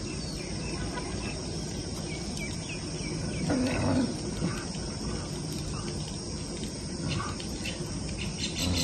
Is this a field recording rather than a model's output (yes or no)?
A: yes